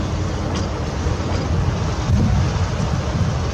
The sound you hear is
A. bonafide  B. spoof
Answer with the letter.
A